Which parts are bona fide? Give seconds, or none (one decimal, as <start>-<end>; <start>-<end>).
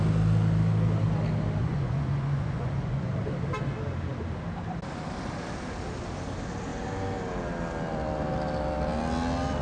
0.0-1.6; 3.1-9.6